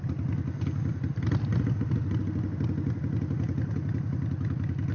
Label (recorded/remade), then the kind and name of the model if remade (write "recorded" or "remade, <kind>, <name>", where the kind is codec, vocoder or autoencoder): recorded